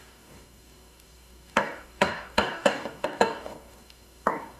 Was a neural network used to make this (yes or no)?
yes